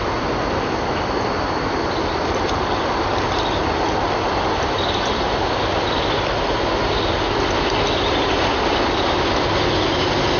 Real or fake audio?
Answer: real